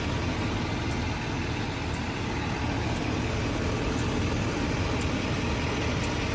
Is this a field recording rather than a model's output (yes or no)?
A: yes